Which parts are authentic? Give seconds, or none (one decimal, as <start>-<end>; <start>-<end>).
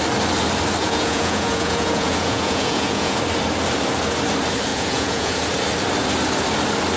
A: 0.0-0.8; 3.2-4.7; 5.3-7.0